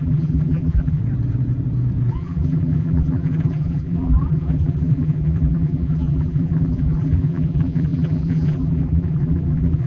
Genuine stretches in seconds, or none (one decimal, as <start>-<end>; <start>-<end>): 1.0-2.1